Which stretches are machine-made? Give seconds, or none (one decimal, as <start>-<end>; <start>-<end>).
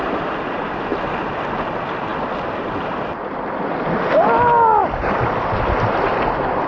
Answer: none